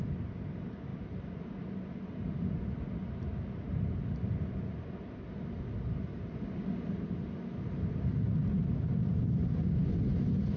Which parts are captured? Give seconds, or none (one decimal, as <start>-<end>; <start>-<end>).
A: 0.0-10.6